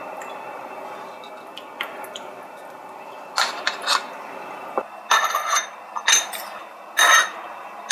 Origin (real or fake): real